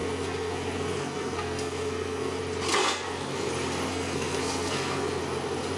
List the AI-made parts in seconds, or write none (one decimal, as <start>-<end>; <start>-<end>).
0.0-2.4; 2.8-3.5; 3.9-5.2